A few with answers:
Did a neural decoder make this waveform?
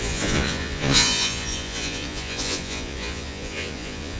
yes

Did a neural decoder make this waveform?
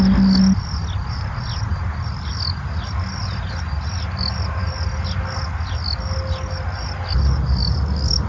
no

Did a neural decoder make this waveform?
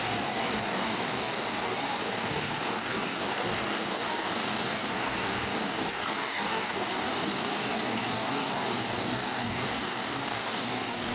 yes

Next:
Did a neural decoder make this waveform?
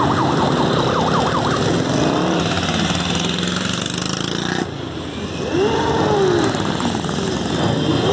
no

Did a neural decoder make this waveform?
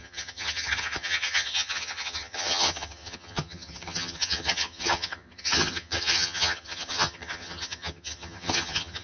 yes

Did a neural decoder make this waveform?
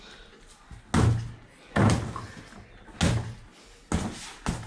no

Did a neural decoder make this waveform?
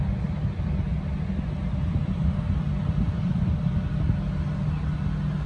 no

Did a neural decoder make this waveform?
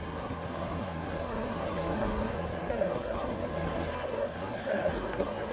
yes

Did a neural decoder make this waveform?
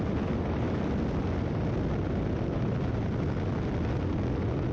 no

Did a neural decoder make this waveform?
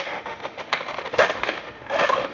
yes